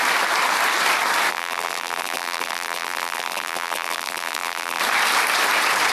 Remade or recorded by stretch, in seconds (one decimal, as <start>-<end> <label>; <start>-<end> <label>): 0.0-1.3 recorded; 1.3-4.8 remade; 4.8-5.9 recorded